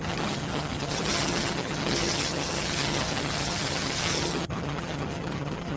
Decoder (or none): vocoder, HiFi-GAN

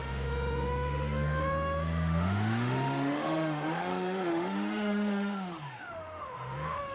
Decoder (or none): autoencoder, DAC-VAE